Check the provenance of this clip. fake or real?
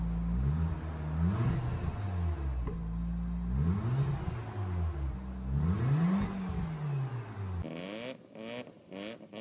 real